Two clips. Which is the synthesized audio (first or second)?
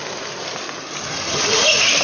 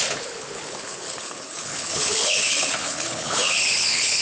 second